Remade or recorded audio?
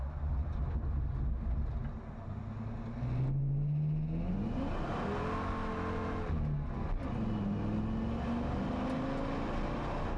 recorded